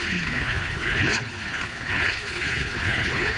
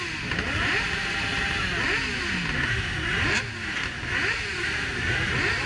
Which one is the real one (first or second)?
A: second